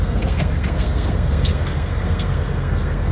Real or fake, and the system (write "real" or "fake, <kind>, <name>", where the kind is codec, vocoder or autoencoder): fake, codec, SNAC